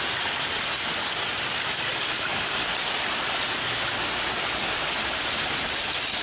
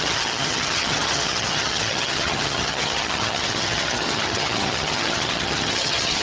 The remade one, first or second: second